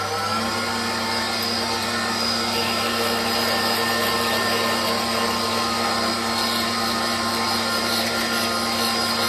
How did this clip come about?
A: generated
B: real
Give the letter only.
A